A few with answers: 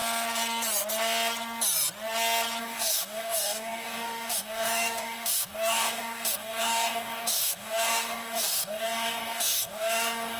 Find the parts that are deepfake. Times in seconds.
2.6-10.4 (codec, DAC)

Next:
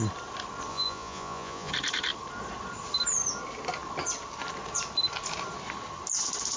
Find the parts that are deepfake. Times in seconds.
0.7-1.7 (vocoder, Vocos)

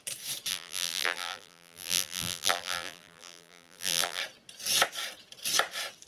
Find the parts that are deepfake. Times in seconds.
0.5-4.2 (vocoder, BigVGAN v2)

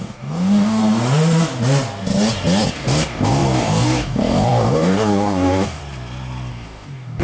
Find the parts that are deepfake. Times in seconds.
0.0-0.8 (codec, DAC); 2.7-5.8; 6.5-7.2

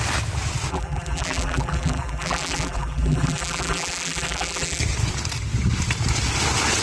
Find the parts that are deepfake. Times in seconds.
0.7-4.8 (vocoder, BigVGAN v2)

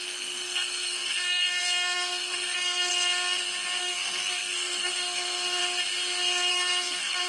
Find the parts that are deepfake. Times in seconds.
0.0-2.9 (codec, SNAC); 3.8-5.6; 6.5-7.3

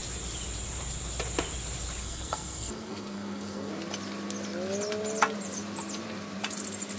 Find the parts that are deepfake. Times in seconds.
2.0-3.7 (codec, SNAC)